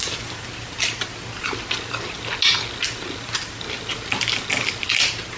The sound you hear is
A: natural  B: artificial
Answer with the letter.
A